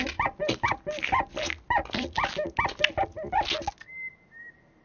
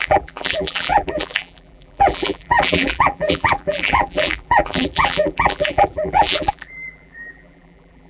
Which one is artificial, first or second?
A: second